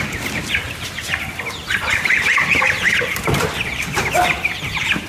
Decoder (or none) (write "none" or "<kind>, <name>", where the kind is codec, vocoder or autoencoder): vocoder, BigVGAN v2